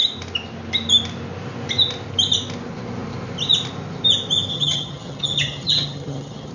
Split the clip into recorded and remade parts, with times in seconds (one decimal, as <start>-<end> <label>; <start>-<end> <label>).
0.0-4.5 recorded; 4.5-6.5 remade